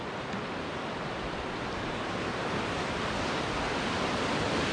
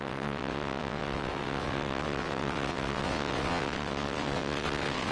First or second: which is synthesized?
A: second